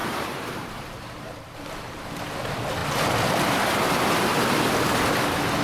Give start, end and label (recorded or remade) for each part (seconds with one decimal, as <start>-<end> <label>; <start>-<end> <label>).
0.0-2.0 remade; 2.0-5.6 recorded